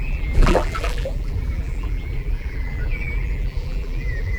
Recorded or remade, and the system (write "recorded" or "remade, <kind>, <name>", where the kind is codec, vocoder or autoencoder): remade, vocoder, BigVGAN v2